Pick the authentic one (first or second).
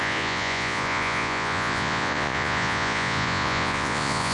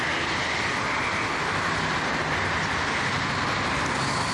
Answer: second